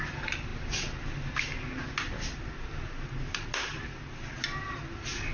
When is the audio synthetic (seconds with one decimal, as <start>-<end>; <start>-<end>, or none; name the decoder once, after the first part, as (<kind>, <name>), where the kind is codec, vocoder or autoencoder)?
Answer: none